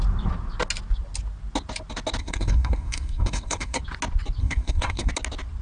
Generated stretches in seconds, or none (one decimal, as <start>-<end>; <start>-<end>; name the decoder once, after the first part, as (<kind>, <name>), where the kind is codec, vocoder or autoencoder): 2.2-3.8 (codec, SNAC); 4.4-5.1